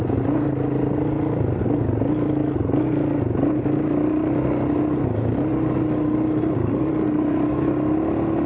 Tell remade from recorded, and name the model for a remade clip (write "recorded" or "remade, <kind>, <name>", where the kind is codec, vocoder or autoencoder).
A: recorded